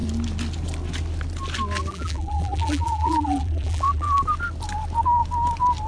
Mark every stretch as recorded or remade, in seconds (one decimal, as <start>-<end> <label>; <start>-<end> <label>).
0.0-1.9 recorded; 1.9-4.2 remade; 4.2-5.9 recorded